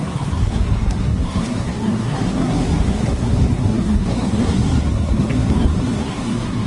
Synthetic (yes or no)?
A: yes